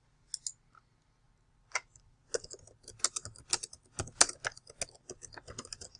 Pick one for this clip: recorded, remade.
recorded